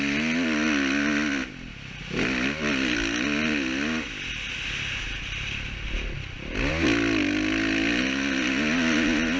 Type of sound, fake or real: real